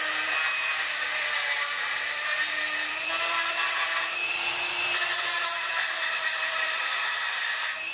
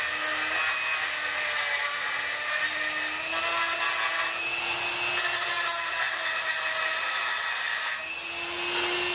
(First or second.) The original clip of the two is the second